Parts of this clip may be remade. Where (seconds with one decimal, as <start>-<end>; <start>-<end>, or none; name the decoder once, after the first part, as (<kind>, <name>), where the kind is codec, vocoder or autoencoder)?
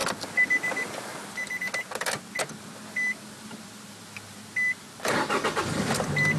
none